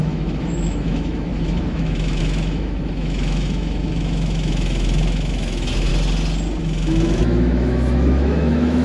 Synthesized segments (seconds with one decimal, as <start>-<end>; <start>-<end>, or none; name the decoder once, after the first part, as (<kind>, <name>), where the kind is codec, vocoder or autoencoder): 0.0-5.9 (autoencoder, DAC-VAE); 6.6-8.8

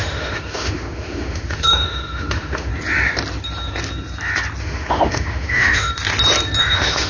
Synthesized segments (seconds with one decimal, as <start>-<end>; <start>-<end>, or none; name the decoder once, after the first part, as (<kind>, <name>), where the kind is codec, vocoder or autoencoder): 0.0-2.7 (autoencoder, DAC-VAE); 4.6-5.9; 6.6-7.1